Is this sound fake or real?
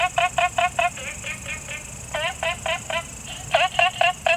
real